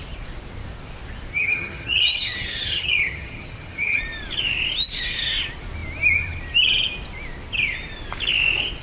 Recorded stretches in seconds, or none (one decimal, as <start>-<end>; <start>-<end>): 0.0-1.3; 4.0-8.8